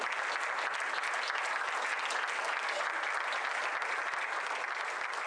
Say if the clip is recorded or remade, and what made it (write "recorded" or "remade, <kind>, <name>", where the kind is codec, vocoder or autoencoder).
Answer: recorded